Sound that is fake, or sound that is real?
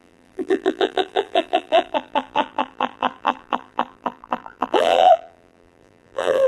fake